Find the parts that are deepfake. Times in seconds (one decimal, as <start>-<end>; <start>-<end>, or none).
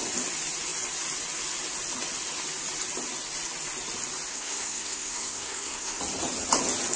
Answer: 4.3-6.0